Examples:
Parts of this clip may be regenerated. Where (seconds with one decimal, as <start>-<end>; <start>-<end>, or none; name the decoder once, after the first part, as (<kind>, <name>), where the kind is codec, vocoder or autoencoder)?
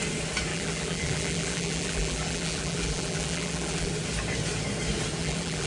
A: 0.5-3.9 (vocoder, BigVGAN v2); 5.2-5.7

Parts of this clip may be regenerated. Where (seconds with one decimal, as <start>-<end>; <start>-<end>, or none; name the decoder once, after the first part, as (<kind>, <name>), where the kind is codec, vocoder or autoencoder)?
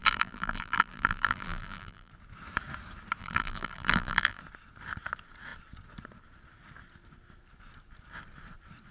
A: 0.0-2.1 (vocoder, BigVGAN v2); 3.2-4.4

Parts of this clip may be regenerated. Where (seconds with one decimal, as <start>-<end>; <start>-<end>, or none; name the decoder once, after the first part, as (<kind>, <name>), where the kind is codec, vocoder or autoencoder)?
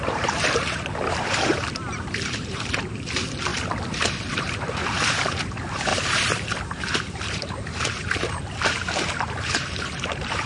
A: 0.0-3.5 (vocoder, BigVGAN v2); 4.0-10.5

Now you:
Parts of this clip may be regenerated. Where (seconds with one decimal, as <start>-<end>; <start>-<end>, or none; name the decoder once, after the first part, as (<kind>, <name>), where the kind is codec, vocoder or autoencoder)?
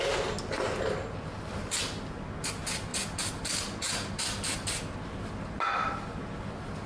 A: none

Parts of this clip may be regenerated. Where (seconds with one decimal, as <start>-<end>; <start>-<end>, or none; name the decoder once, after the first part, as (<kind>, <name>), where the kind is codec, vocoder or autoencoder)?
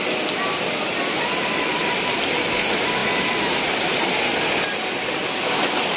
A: none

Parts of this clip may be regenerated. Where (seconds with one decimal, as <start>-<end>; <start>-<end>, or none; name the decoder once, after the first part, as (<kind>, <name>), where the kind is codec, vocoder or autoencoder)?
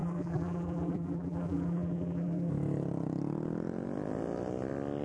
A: 0.0-2.5 (vocoder, BigVGAN v2)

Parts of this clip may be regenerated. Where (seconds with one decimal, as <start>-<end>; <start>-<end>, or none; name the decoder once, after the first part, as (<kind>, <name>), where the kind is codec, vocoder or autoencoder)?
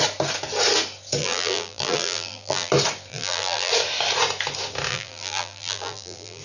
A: 1.2-2.7 (vocoder, BigVGAN v2); 3.1-3.7; 4.9-6.4